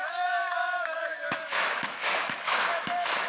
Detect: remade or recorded remade